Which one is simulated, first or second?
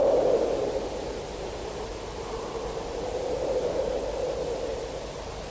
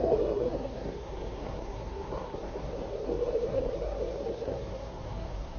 second